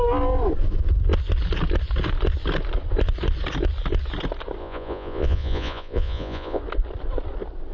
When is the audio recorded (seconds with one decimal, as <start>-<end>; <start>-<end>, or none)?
0.0-4.6; 6.6-7.7